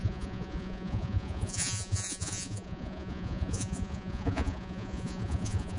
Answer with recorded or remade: remade